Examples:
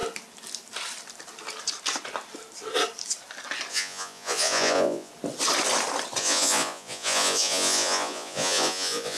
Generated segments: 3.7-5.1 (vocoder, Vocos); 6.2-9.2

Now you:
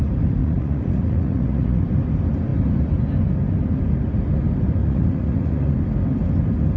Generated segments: 0.4-1.8 (vocoder, Vocos); 4.8-5.7

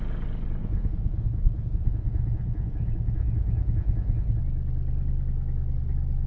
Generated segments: 0.6-4.4 (vocoder, Vocos)

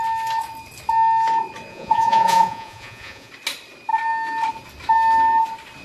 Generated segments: 1.7-3.3 (vocoder, Vocos)

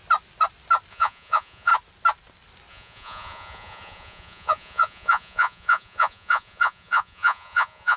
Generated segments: 0.9-1.7 (vocoder, Vocos); 2.7-8.0

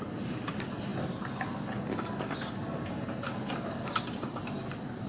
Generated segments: none

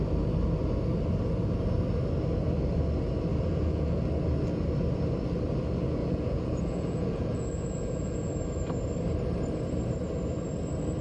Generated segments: 3.3-4.0 (vocoder, Vocos); 6.0-8.3